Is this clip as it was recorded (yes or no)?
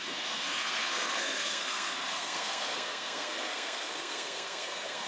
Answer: no